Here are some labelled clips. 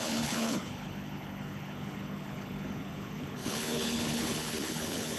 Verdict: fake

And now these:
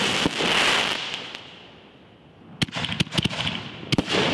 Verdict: real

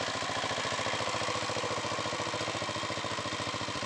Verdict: fake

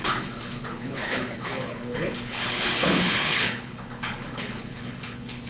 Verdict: fake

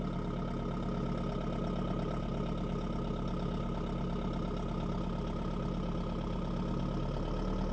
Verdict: real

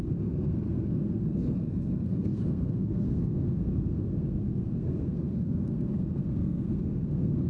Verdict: fake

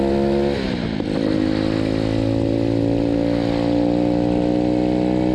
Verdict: real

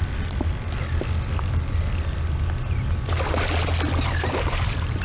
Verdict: real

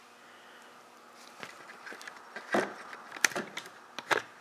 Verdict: real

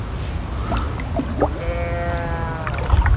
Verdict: real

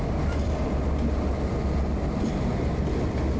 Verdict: real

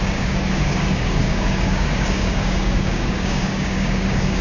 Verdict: fake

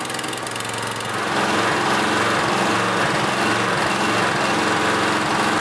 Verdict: real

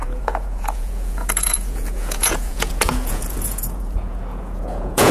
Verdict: fake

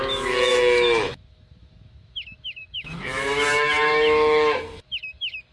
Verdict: fake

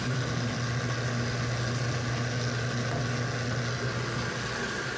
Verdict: real